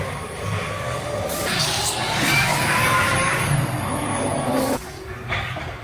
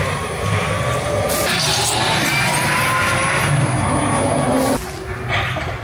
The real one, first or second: second